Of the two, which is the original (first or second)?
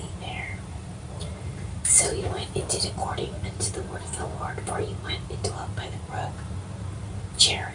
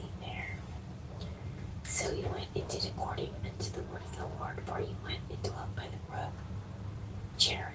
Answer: second